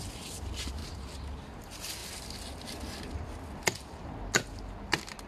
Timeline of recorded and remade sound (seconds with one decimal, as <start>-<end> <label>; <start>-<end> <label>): 0.0-5.3 recorded